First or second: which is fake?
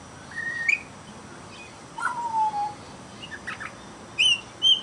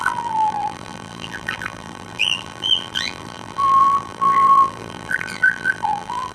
second